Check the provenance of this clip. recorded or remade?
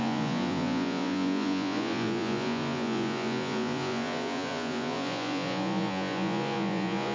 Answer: remade